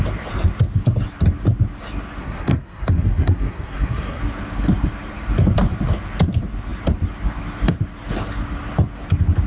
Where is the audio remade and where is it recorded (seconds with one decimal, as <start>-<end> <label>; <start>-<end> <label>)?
0.0-2.2 recorded; 2.2-4.2 remade; 4.2-9.5 recorded